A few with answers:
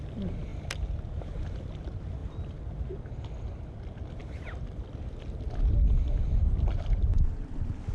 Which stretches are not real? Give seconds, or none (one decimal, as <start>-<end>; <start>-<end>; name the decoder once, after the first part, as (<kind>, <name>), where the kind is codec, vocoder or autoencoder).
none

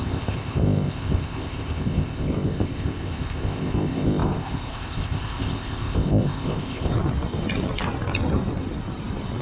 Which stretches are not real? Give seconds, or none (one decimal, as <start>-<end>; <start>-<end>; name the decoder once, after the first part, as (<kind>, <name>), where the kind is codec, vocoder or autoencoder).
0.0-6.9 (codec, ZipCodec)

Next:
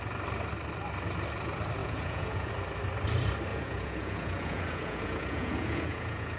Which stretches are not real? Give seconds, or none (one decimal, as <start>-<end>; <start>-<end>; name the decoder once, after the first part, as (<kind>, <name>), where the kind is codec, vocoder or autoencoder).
1.8-2.5 (vocoder, Vocos); 3.5-6.4